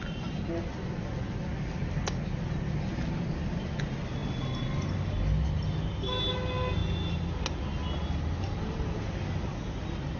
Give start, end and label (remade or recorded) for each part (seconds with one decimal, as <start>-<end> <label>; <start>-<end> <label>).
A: 0.0-10.2 recorded